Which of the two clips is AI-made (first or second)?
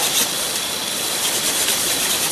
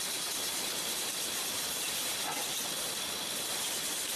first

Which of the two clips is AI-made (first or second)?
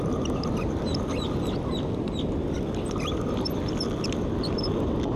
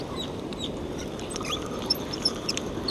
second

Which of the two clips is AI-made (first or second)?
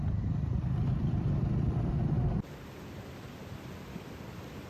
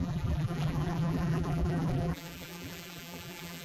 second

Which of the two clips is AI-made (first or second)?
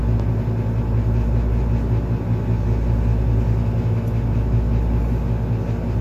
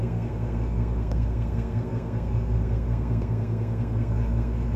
second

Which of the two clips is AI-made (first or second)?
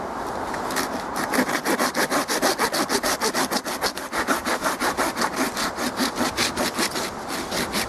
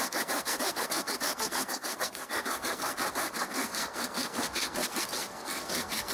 second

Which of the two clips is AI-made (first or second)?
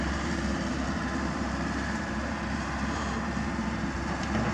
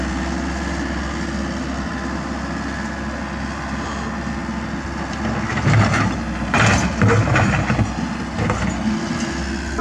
first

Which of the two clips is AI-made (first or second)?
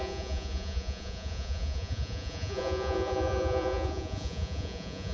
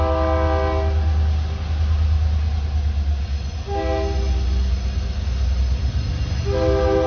first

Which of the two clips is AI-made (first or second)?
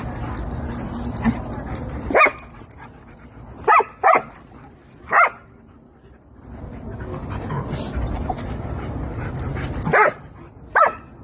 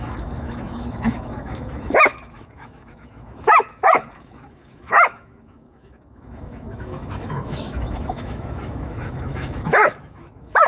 second